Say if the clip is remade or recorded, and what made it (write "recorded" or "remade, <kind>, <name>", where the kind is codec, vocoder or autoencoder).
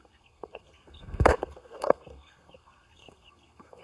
remade, codec, SNAC